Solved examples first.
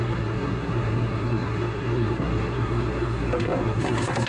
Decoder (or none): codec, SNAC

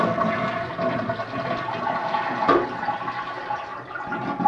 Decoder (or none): none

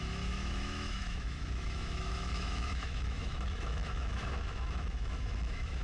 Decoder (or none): autoencoder, DAC-VAE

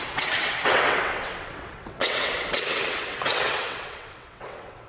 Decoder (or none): vocoder, WaveNeXt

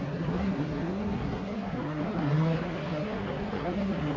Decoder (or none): codec, SNAC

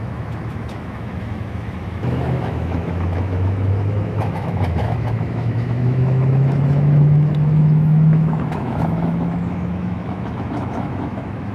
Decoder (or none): autoencoder, DAC-VAE